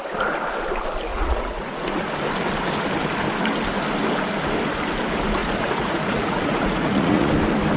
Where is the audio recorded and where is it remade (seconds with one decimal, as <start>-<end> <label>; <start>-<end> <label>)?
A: 0.0-1.1 recorded; 1.1-2.0 remade; 2.0-5.4 recorded; 5.4-7.3 remade; 7.3-7.8 recorded